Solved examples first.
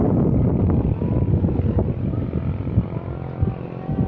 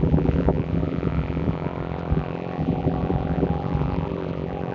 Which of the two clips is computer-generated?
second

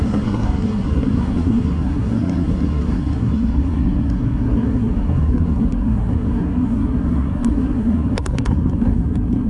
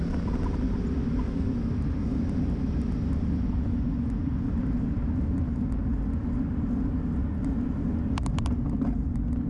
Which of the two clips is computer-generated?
first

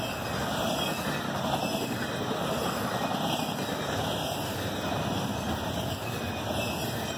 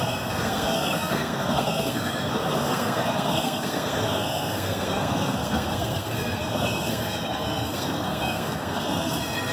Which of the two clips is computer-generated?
second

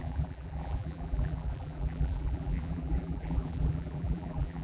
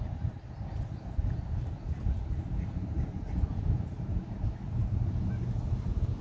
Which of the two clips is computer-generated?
first